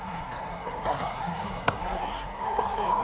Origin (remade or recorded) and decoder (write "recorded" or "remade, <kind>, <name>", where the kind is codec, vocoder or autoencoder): remade, codec, SNAC